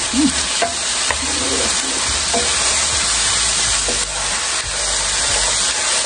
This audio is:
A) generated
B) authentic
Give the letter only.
B